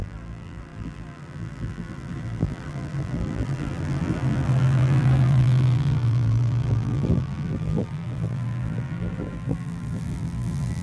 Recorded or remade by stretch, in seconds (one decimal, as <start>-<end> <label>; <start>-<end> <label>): 0.0-10.8 remade